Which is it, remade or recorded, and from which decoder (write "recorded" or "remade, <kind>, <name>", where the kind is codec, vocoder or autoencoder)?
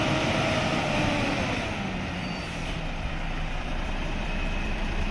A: remade, vocoder, BigVGAN v2